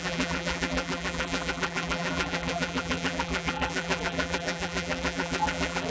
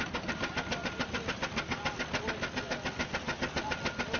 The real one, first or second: second